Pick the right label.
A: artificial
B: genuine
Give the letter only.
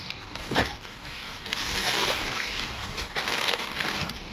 A